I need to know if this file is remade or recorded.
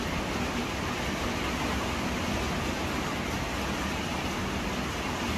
recorded